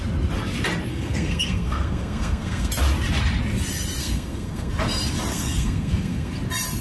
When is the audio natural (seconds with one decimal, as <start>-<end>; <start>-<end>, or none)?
0.0-0.9; 2.7-4.0; 4.7-5.3; 6.3-6.8